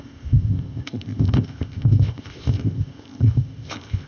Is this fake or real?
fake